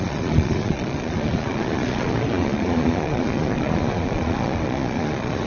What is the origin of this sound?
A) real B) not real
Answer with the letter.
B